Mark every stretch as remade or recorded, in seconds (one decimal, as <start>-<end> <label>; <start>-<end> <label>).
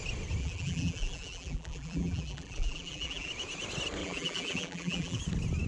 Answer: 0.0-0.4 recorded; 0.4-3.3 remade; 3.3-4.0 recorded; 4.0-5.2 remade; 5.2-5.7 recorded